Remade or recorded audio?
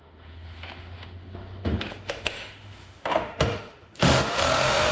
remade